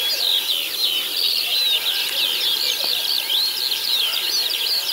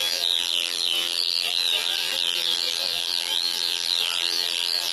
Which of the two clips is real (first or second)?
first